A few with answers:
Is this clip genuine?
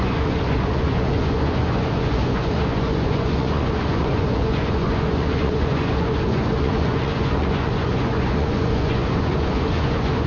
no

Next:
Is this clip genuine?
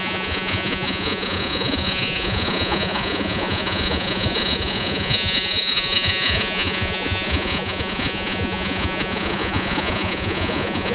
no